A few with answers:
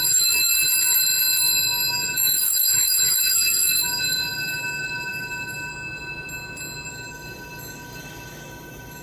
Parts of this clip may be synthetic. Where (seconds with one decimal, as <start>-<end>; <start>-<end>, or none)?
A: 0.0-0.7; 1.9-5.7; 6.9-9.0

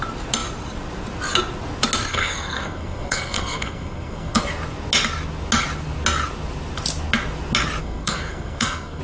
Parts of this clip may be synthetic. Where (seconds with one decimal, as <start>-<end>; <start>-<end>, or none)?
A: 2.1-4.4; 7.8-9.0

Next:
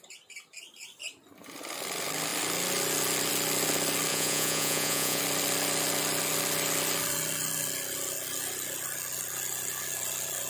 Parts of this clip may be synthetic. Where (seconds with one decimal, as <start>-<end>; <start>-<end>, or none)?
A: 4.1-5.2